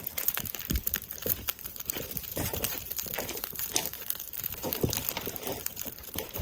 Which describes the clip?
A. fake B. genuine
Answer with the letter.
A